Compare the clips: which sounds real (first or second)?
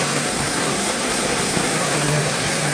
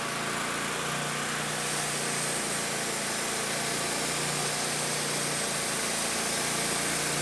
second